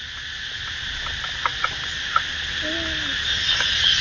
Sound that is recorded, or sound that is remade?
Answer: recorded